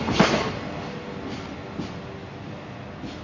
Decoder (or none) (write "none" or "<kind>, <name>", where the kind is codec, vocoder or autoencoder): none